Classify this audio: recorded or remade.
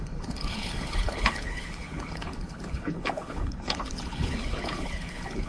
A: remade